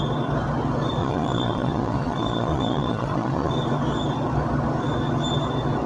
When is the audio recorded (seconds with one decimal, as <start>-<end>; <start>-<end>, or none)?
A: 0.0-1.0; 3.5-5.9